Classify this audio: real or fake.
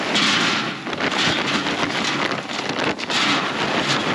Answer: real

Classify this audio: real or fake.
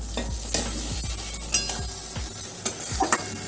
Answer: real